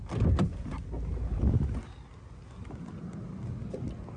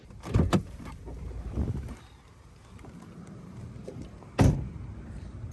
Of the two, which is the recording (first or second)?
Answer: first